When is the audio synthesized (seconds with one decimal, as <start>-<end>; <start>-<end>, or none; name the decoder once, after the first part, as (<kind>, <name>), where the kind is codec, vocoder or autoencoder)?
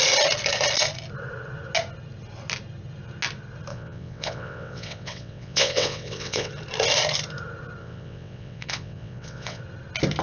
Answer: 3.7-6.5 (vocoder, WaveNeXt); 7.8-9.6